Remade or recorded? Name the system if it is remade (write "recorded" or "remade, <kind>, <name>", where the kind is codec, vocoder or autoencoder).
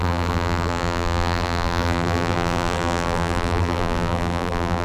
remade, vocoder, BigVGAN v2